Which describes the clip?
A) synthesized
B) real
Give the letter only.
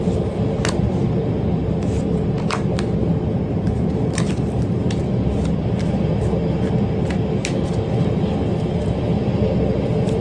B